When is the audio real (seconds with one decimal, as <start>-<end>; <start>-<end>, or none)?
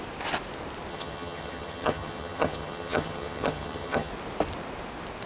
0.0-0.9; 4.1-5.3